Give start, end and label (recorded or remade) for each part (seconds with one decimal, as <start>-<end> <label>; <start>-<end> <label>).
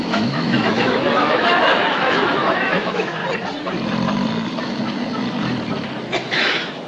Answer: 0.0-3.2 remade; 3.2-6.3 recorded; 6.3-6.9 remade